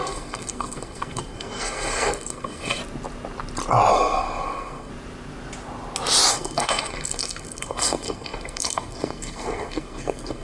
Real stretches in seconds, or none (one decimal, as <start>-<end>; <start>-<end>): 2.8-3.9; 4.9-6.3